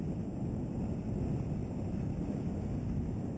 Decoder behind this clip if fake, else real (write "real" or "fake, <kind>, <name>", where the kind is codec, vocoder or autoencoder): real